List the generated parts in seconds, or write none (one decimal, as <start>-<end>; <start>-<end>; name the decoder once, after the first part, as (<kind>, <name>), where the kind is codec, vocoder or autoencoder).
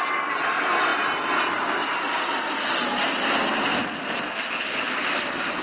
none